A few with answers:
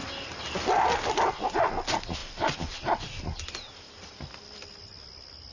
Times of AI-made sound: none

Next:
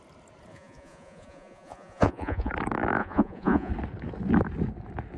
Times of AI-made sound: 0.5-2.5 (vocoder, Vocos); 3.0-3.7

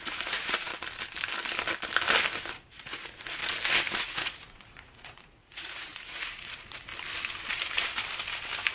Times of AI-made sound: 0.0-0.7 (vocoder, Vocos); 2.5-3.4; 4.0-6.9

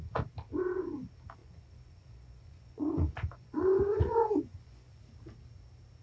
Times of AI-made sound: 1.4-5.0 (vocoder, Vocos)

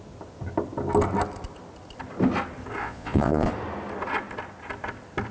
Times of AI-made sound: 2.8-3.5 (vocoder, Vocos)

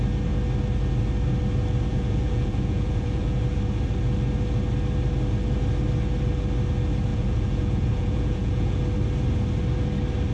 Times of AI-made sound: 1.9-3.4 (vocoder, Vocos); 7.1-8.8

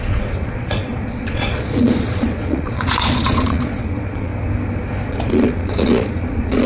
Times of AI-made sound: 0.0-4.3 (vocoder, Vocos); 5.1-6.7